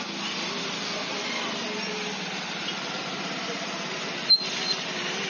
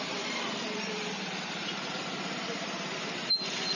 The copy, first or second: second